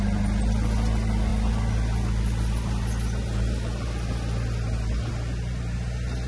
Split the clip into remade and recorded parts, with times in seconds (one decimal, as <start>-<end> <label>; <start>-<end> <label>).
0.0-6.3 recorded